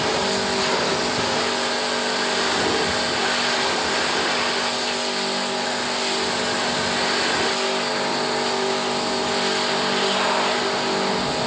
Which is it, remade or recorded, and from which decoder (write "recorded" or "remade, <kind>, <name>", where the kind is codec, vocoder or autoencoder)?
recorded